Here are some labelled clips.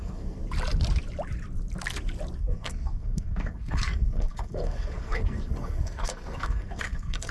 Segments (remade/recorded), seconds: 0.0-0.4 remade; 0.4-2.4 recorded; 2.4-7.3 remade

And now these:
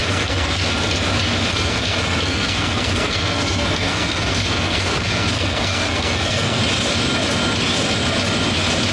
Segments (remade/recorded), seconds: 0.0-0.7 remade; 0.7-1.5 recorded; 1.5-6.6 remade; 6.6-8.9 recorded

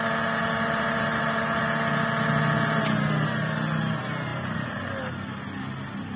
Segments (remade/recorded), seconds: 0.0-0.4 recorded; 0.4-1.6 remade; 1.6-6.2 recorded